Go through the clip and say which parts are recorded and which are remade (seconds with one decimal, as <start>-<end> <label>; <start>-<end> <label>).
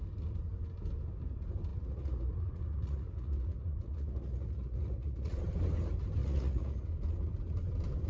0.0-1.7 recorded; 1.7-5.4 remade; 5.4-6.2 recorded; 6.2-6.9 remade; 6.9-8.1 recorded